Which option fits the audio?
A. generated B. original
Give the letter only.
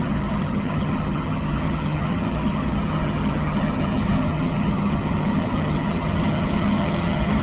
A